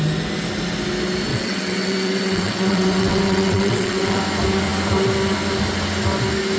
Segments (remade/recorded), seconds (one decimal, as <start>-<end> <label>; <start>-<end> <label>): 0.0-1.3 recorded; 1.3-4.2 remade; 4.2-6.6 recorded